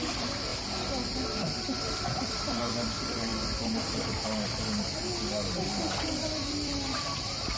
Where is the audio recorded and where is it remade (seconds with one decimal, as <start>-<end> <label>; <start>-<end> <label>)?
0.0-0.5 remade; 0.5-1.2 recorded; 1.2-3.3 remade; 3.3-3.9 recorded; 3.9-5.0 remade; 5.0-5.9 recorded; 5.9-7.6 remade